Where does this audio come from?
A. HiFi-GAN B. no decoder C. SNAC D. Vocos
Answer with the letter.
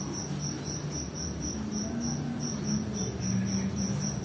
B